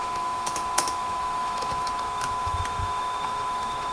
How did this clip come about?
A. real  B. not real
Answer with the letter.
B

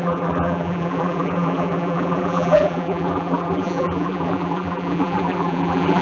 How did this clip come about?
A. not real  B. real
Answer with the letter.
A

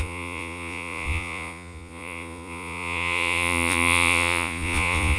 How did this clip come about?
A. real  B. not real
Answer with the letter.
B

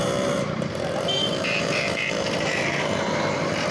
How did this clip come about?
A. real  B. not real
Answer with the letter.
B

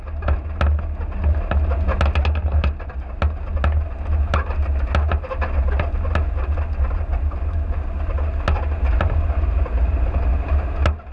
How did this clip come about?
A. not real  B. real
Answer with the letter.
B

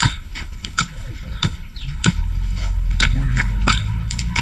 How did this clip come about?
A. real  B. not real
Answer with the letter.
B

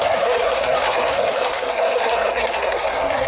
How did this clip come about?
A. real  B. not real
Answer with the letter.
B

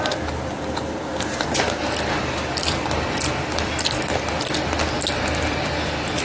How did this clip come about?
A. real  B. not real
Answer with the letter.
A